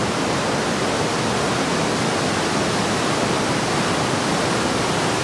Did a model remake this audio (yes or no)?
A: no